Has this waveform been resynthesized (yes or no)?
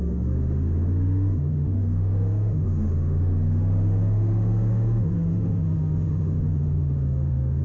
yes